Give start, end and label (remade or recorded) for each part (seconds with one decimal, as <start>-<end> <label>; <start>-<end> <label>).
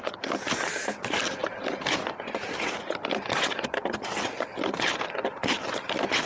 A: 0.0-6.3 recorded